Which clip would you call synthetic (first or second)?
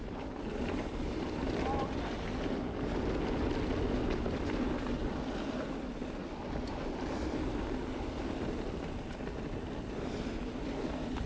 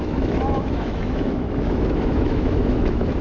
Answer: second